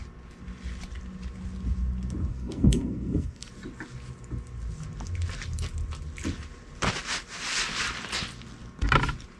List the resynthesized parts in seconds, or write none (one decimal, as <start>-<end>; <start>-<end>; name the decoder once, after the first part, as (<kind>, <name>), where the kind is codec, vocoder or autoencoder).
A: 2.3-3.5 (codec, SNAC)